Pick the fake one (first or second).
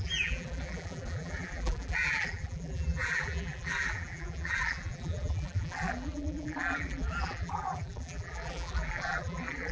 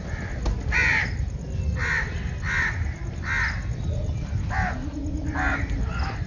first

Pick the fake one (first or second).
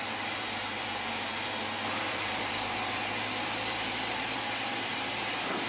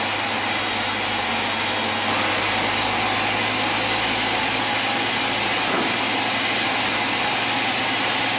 first